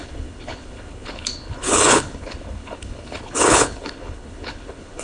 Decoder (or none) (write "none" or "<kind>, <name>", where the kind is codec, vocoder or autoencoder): codec, HILCodec